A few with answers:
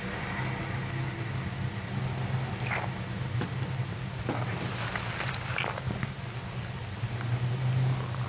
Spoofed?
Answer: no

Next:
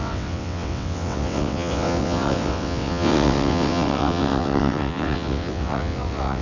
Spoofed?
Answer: yes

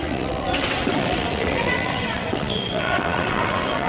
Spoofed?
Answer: yes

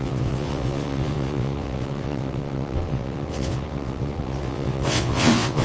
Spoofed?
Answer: yes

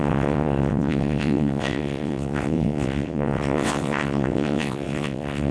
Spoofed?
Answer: yes